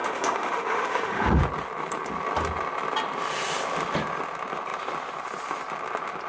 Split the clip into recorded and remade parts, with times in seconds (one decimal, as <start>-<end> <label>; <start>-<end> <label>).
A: 0.0-1.4 remade; 1.4-6.3 recorded